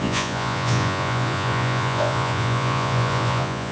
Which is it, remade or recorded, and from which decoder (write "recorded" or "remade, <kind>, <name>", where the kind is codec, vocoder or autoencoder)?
remade, vocoder, Vocos